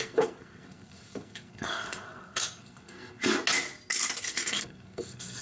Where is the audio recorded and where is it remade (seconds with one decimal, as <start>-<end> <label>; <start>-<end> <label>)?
0.0-3.2 remade; 3.2-4.2 recorded; 4.2-5.4 remade